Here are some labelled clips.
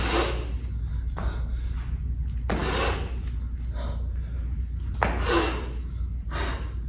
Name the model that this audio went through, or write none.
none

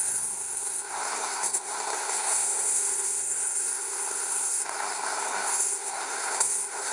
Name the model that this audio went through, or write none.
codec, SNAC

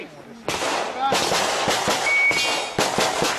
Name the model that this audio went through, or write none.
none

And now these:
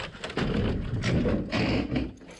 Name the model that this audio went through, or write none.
none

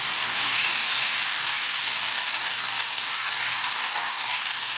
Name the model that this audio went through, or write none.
codec, DAC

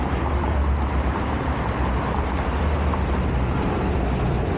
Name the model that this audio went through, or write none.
none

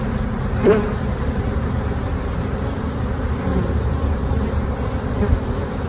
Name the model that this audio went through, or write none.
vocoder, BigVGAN v2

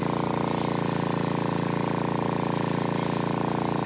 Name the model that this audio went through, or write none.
none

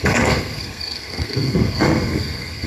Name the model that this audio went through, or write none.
codec, SNAC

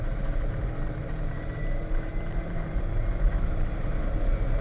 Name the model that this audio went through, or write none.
vocoder, BigVGAN v2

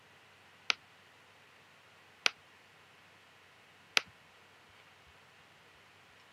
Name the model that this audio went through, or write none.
none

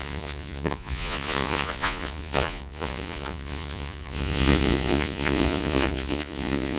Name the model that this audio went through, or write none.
vocoder, Vocos